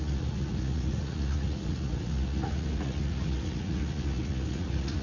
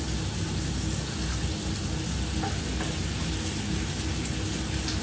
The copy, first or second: first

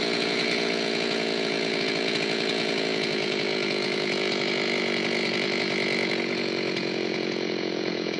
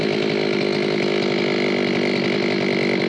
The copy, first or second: first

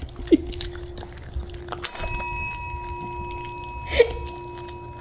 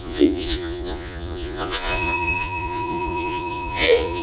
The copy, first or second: second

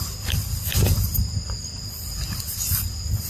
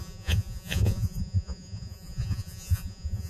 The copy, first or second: second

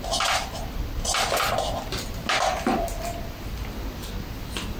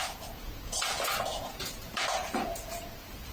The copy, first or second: second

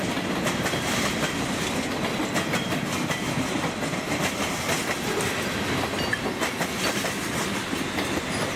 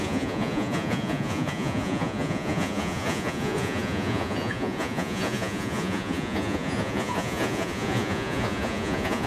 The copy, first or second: second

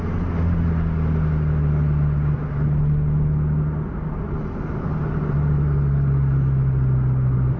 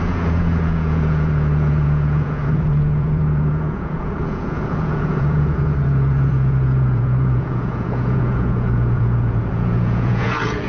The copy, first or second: second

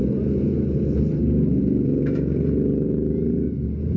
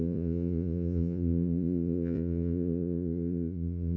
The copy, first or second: second